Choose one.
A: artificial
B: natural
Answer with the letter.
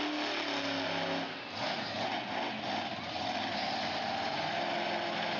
B